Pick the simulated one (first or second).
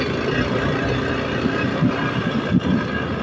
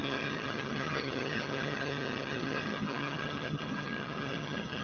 second